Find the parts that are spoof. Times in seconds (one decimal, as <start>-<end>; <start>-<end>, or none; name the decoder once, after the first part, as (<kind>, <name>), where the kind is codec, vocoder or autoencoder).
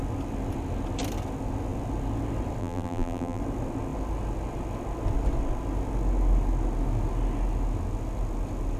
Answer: 2.6-3.4 (vocoder, BigVGAN v2)